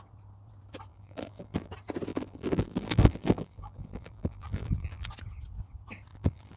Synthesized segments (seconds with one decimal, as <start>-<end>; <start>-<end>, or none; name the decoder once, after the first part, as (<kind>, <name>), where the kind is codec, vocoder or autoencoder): 0.9-1.7 (vocoder, BigVGAN v2); 2.1-5.1; 6.1-6.6